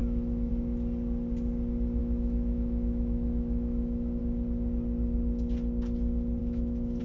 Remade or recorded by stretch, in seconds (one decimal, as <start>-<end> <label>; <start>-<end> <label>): 0.0-0.5 remade; 0.5-2.0 recorded; 2.0-4.2 remade; 4.2-6.4 recorded; 6.4-7.0 remade